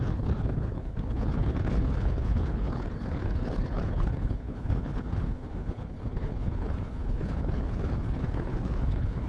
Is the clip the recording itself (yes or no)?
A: no